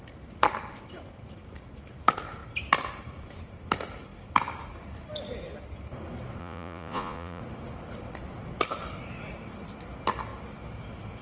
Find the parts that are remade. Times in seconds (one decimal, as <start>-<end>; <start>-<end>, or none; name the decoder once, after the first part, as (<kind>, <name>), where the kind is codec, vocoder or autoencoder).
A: 6.4-7.4 (vocoder, Vocos)